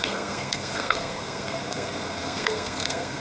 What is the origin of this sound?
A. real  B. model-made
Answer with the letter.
B